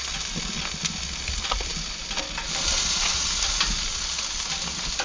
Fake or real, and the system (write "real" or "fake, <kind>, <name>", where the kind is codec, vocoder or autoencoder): real